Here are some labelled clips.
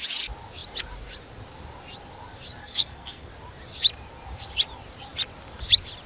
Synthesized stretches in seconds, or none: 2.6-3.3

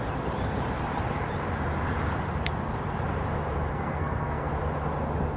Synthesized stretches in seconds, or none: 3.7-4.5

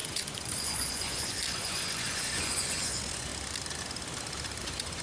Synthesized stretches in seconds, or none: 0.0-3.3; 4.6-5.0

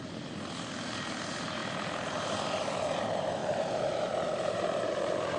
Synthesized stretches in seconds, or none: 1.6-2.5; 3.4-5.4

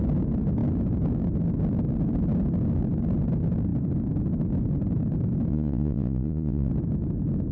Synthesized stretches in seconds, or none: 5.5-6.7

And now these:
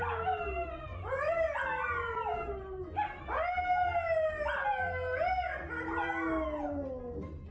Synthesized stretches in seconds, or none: 0.9-1.5; 2.3-3.2

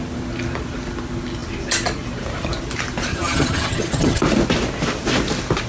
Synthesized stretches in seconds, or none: 3.1-4.2

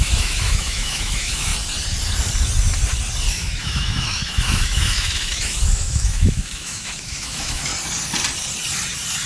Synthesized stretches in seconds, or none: 0.0-1.5; 3.3-7.7